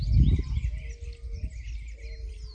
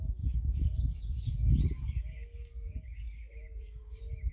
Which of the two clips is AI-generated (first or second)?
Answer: second